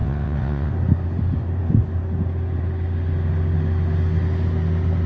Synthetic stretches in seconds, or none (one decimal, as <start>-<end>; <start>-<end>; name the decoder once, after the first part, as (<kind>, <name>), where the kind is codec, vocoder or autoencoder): 0.0-0.7 (vocoder, WaveNeXt)